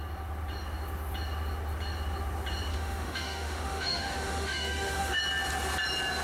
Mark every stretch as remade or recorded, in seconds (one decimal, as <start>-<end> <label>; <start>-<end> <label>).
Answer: 0.0-2.7 recorded; 2.7-5.2 remade; 5.2-6.2 recorded

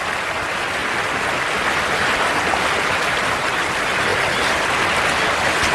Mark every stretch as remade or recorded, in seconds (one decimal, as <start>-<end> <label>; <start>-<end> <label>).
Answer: 0.0-5.7 recorded

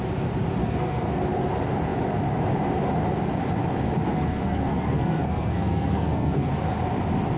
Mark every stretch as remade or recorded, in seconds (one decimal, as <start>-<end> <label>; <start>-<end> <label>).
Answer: 0.0-0.6 recorded; 0.6-1.2 remade; 1.2-4.1 recorded; 4.1-6.5 remade; 6.5-7.4 recorded

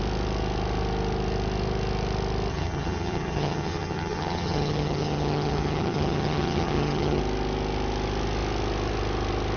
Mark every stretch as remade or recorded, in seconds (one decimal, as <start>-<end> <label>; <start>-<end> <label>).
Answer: 0.0-2.5 recorded; 2.5-7.2 remade; 7.2-9.6 recorded

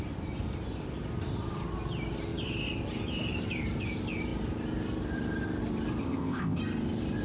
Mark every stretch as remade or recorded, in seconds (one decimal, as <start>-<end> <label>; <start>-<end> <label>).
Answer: 0.0-6.0 recorded; 6.0-6.6 remade; 6.6-7.2 recorded

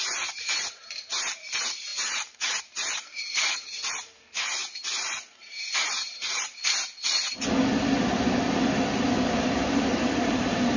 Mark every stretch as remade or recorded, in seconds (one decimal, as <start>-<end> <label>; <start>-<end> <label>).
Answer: 0.0-4.8 remade; 4.8-5.3 recorded; 5.3-6.6 remade; 6.6-9.3 recorded; 9.3-10.8 remade